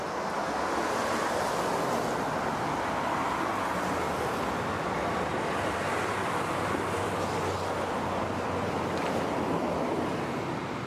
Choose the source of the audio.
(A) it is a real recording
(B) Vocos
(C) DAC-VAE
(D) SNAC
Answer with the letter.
A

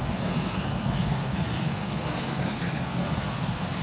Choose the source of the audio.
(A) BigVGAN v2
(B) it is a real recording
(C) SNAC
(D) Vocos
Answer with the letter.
C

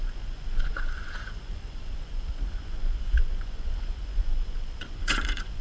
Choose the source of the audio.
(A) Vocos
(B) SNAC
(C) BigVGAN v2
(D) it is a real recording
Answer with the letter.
A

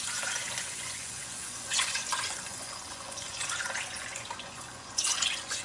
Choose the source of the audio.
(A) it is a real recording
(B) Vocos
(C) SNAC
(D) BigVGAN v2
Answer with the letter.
B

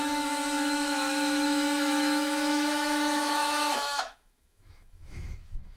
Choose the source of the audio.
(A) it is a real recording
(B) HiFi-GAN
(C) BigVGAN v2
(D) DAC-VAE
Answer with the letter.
D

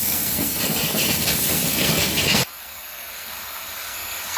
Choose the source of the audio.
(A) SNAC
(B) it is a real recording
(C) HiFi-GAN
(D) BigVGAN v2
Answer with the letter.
A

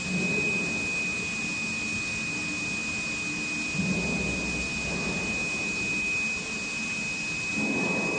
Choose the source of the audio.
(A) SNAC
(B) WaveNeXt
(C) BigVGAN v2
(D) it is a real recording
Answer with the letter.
D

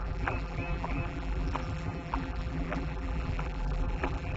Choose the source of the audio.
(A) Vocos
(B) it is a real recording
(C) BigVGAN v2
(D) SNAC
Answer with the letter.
C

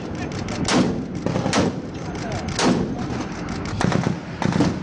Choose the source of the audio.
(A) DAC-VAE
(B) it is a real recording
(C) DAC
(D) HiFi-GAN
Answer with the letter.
B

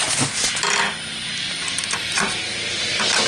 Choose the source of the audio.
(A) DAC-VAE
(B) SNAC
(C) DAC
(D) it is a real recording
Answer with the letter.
D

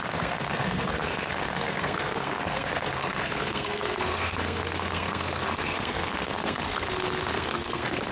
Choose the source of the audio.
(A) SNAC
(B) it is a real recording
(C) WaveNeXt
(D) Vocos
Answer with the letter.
A